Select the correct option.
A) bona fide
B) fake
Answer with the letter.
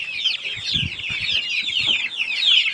A